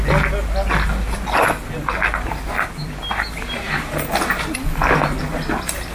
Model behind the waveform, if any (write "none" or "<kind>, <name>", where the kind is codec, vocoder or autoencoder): none